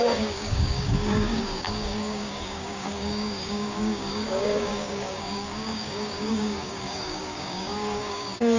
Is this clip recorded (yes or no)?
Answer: no